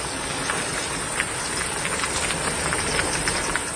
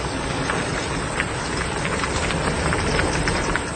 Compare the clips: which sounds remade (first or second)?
second